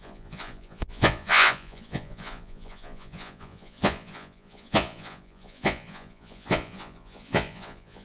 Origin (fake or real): fake